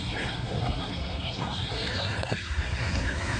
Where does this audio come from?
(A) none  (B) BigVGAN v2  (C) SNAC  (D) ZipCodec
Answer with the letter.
C